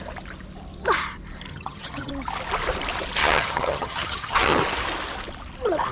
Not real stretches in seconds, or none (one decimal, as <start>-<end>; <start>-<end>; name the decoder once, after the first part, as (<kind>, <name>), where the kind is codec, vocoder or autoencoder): 1.5-2.1 (vocoder, HiFi-GAN); 3.2-4.6